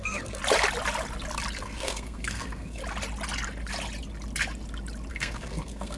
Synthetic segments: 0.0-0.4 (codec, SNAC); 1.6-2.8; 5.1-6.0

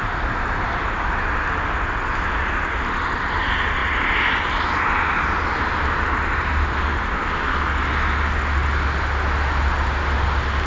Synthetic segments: none

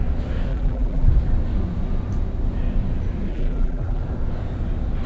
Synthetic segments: 0.5-1.1 (vocoder, BigVGAN v2); 3.3-4.0

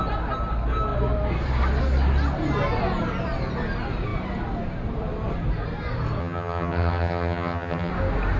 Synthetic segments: 6.2-7.9 (vocoder, HiFi-GAN)

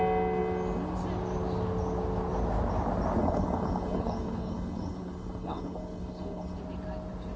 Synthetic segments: 3.2-6.6 (codec, HILCodec)

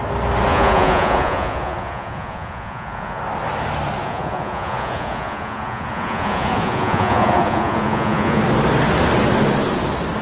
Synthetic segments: 0.5-3.2 (vocoder, Vocos); 4.0-8.4